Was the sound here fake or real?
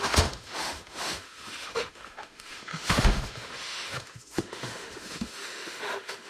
fake